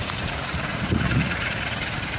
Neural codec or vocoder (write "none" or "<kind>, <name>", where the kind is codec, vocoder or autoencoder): vocoder, Vocos